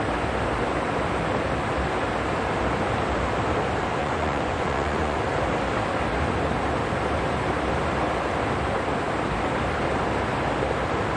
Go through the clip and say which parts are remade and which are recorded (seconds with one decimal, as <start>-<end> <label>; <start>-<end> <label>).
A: 0.0-4.0 recorded; 4.0-5.2 remade; 5.2-11.2 recorded